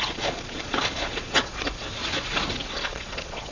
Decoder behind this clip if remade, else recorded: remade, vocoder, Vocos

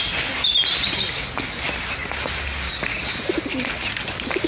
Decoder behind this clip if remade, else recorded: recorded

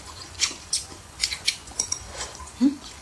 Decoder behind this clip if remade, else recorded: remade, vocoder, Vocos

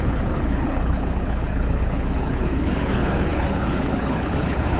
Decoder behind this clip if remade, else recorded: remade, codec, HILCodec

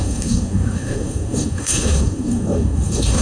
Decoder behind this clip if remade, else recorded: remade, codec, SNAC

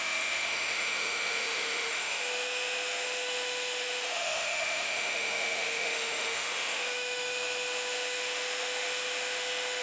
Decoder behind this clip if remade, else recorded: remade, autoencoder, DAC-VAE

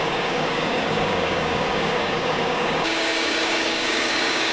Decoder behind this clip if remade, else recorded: remade, codec, DAC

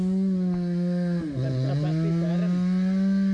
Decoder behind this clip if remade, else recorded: recorded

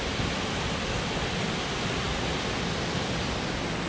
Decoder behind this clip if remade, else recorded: recorded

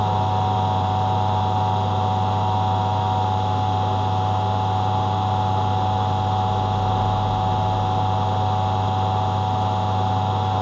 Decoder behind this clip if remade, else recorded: recorded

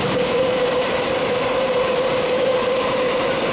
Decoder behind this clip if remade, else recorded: remade, vocoder, BigVGAN v2